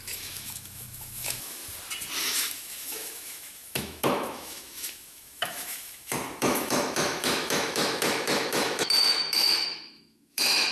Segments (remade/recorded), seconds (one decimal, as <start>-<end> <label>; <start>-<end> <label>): 0.0-1.6 remade; 1.6-2.2 recorded; 2.2-10.7 remade